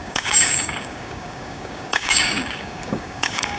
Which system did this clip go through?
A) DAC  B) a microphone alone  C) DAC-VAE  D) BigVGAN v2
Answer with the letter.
A